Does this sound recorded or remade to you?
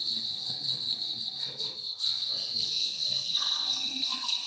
remade